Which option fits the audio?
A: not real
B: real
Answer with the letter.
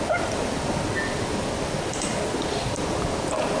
B